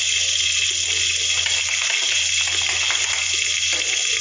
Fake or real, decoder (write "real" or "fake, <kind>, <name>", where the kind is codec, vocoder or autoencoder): real